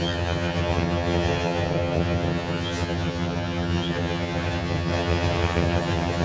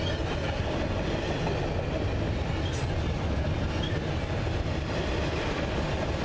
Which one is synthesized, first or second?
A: first